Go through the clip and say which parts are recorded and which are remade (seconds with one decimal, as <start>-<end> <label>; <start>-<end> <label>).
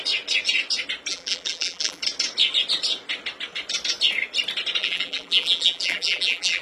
0.0-1.1 recorded; 1.1-2.0 remade; 2.0-4.8 recorded; 4.8-6.6 remade